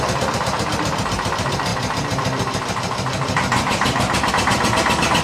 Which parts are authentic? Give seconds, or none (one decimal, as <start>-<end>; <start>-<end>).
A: 0.0-1.7; 4.3-5.2